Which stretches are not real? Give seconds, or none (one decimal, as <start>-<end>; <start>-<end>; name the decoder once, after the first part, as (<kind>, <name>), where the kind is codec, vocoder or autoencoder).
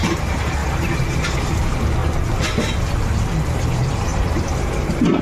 0.0-2.0 (vocoder, BigVGAN v2); 2.9-5.2